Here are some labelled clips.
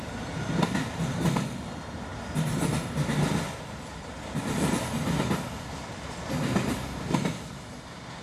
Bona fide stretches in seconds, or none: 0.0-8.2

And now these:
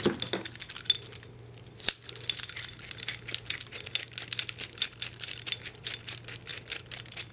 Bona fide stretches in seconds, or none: 0.0-7.3

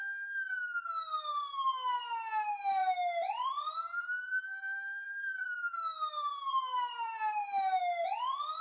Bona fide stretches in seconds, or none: 0.0-2.8; 7.8-8.6